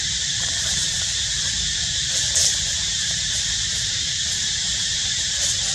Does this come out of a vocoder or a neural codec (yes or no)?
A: yes